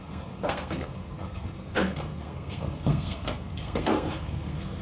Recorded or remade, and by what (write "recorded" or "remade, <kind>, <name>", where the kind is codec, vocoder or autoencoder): remade, codec, SNAC